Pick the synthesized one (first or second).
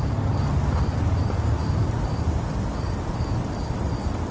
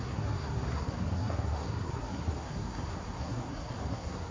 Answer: second